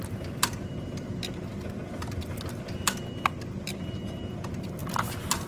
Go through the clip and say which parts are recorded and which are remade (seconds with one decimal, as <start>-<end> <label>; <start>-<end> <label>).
0.0-5.5 recorded